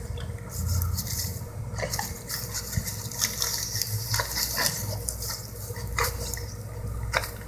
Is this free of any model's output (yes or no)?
no